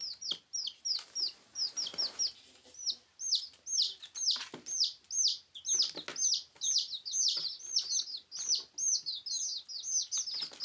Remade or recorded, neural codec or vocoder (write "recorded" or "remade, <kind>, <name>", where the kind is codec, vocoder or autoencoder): recorded